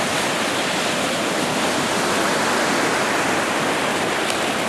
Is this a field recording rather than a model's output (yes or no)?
yes